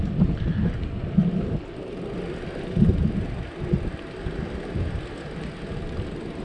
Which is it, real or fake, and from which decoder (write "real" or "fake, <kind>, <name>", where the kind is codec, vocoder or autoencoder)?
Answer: real